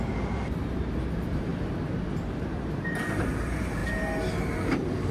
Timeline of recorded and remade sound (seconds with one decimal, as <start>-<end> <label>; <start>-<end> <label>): 0.0-1.5 remade; 1.5-2.2 recorded; 2.2-3.8 remade; 3.8-5.1 recorded